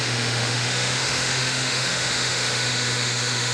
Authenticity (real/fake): fake